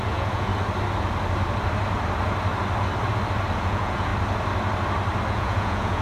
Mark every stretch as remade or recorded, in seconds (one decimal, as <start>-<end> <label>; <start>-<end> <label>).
0.0-0.5 remade; 0.5-3.6 recorded; 3.6-4.1 remade; 4.1-5.3 recorded; 5.3-6.0 remade